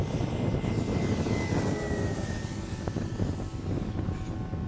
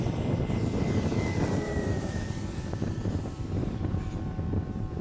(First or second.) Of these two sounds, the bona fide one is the first